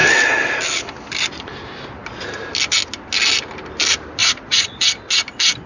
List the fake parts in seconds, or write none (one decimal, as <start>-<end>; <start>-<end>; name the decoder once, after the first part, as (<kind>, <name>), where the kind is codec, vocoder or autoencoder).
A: 4.2-4.8 (vocoder, Vocos)